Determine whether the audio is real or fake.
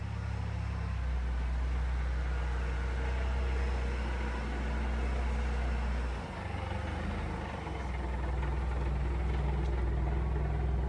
real